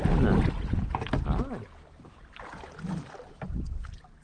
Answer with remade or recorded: recorded